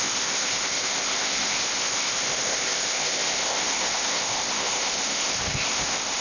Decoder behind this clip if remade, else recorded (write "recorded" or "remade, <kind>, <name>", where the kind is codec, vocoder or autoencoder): remade, codec, ZipCodec